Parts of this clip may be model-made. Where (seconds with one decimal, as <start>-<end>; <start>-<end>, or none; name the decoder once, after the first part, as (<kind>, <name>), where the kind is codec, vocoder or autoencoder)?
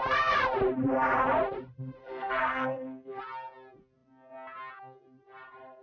2.0-3.2 (codec, SNAC)